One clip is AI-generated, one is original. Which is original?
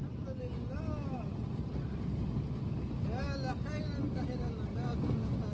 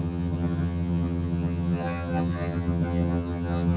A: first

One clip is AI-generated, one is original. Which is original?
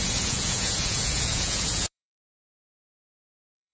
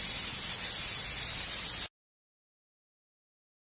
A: second